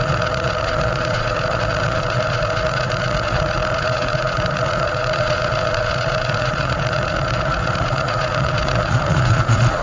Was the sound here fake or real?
fake